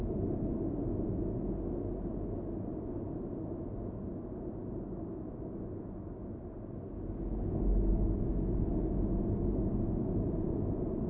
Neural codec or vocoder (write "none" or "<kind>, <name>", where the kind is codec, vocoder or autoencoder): none